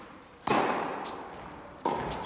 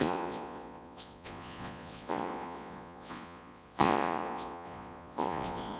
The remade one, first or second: second